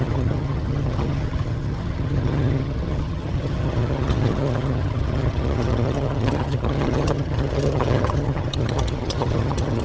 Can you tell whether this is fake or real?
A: fake